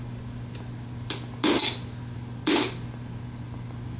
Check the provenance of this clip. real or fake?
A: real